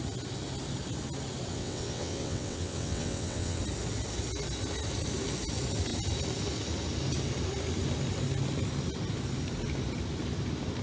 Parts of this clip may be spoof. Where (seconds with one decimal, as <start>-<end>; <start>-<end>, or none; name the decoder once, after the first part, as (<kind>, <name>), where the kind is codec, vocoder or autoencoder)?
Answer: 1.5-3.6 (vocoder, WaveNeXt)